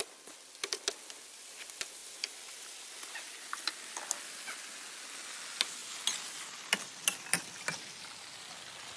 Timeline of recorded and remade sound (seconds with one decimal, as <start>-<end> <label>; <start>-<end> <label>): 0.0-9.0 recorded